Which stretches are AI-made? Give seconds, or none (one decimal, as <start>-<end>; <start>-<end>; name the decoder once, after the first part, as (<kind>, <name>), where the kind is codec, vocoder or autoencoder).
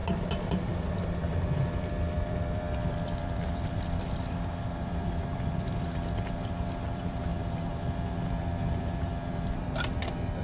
0.9-10.4 (vocoder, BigVGAN v2)